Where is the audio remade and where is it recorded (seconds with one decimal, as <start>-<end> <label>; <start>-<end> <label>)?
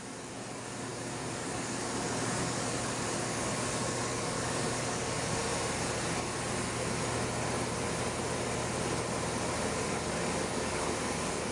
0.0-5.4 remade; 5.4-9.8 recorded; 9.8-11.5 remade